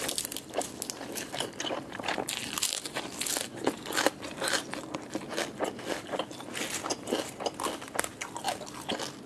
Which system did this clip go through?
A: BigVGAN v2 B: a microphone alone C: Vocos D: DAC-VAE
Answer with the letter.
B